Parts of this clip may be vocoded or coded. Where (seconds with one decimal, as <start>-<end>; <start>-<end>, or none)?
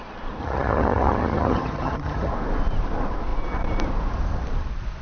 0.4-2.3